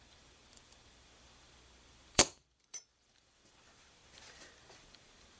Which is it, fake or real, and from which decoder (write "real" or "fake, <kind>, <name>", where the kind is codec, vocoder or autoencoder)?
fake, vocoder, BigVGAN v2